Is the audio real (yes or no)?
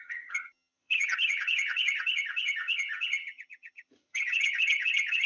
no